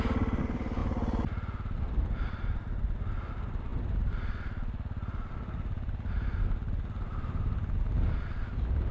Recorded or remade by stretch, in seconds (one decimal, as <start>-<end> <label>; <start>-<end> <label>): 0.0-8.9 recorded